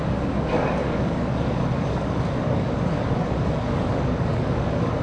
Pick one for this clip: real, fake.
fake